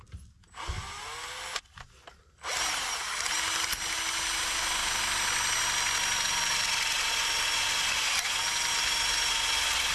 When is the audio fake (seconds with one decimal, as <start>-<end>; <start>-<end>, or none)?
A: none